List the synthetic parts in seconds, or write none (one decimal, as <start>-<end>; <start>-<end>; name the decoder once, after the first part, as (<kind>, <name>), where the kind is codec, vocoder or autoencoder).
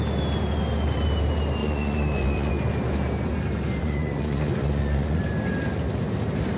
1.6-2.5 (vocoder, Vocos); 3.8-5.2